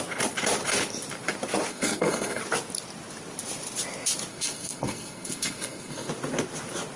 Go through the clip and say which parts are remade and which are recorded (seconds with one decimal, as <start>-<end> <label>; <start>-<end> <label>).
0.0-1.7 recorded; 1.7-2.4 remade; 2.4-4.3 recorded; 4.3-6.1 remade; 6.1-7.0 recorded